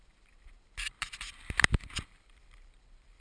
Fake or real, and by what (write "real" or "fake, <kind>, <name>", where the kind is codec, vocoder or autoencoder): fake, vocoder, BigVGAN v2